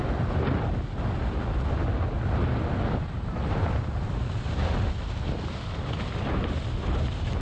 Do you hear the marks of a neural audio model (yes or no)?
no